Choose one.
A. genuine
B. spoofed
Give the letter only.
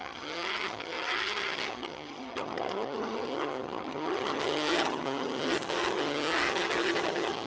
B